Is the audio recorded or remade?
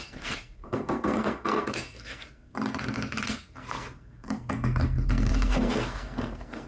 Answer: remade